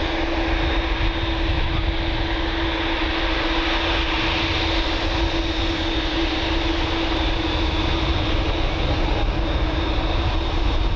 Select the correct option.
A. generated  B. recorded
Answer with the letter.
B